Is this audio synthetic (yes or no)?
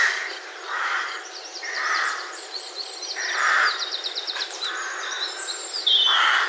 yes